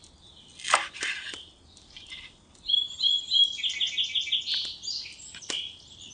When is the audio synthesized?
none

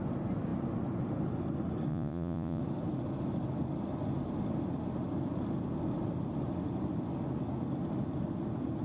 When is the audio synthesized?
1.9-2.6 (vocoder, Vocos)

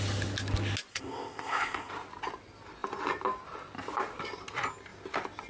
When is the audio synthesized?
0.9-1.9 (codec, ZipCodec)

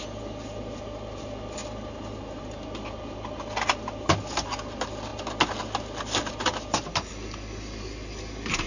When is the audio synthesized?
none

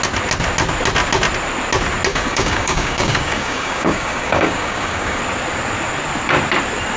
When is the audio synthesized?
2.1-5.2 (codec, DAC)

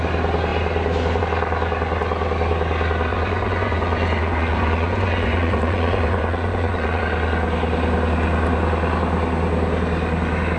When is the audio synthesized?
3.1-7.0 (vocoder, Vocos)